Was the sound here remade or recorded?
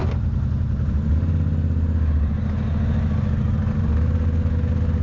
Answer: recorded